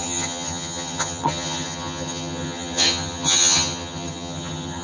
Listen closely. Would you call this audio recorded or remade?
remade